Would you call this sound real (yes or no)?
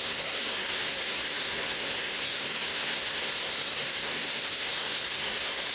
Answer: no